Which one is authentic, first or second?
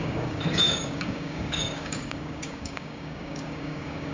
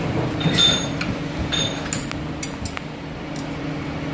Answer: second